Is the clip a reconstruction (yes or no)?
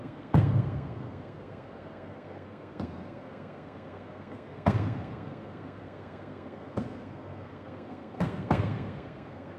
yes